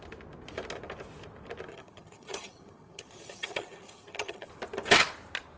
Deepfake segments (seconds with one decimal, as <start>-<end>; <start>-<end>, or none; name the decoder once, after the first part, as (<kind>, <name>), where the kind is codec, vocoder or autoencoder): 1.7-4.5 (vocoder, HiFi-GAN)